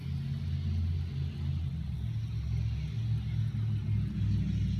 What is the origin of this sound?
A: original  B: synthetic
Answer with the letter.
A